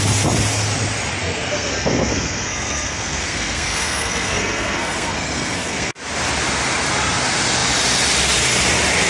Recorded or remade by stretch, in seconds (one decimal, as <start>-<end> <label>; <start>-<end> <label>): 0.0-1.2 recorded; 1.2-5.9 remade; 5.9-9.1 recorded